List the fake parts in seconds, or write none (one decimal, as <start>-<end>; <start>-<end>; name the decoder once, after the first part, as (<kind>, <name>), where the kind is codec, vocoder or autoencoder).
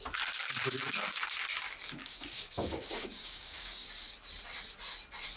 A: 2.0-3.9 (codec, DAC)